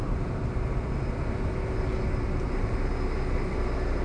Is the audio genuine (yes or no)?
yes